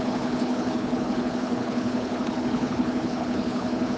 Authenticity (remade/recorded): remade